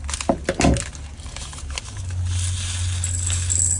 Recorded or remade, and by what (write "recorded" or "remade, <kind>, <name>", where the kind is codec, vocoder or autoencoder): recorded